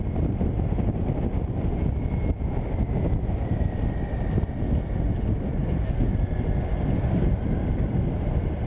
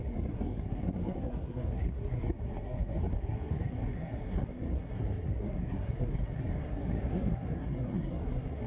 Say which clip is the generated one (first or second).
second